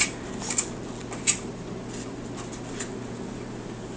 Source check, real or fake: real